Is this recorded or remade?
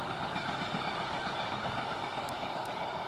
remade